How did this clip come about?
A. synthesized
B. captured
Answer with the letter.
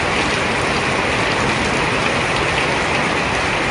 B